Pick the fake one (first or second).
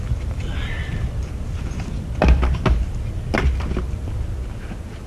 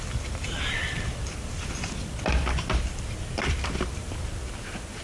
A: second